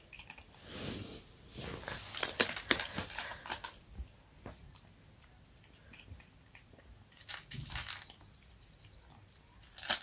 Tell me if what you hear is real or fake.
real